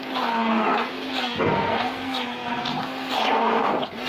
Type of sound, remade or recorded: remade